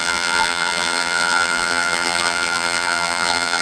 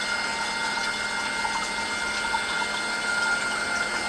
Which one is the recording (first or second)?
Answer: second